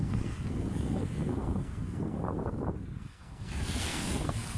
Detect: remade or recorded remade